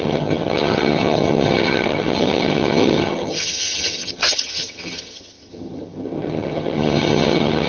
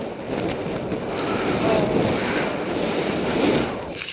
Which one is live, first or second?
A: second